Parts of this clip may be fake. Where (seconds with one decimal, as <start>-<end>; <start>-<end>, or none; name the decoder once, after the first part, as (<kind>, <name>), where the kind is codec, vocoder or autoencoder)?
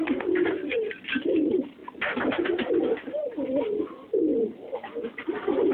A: 0.0-0.6 (vocoder, BigVGAN v2); 1.1-1.8; 2.8-4.3; 5.1-5.7